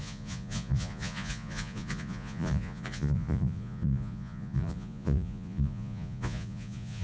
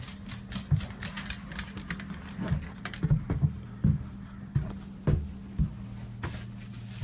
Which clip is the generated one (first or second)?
first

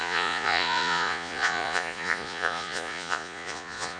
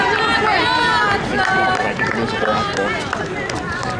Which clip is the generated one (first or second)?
first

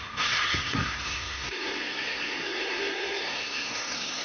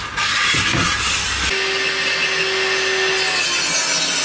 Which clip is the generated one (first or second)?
first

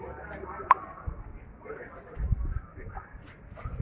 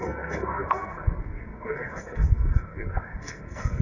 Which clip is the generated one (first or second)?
second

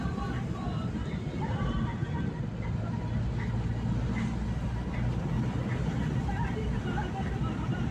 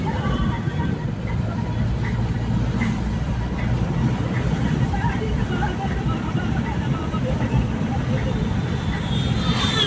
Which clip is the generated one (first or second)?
second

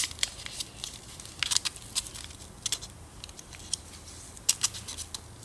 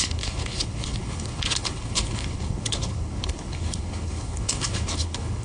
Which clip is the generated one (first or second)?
second